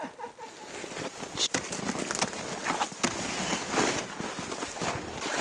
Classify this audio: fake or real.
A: real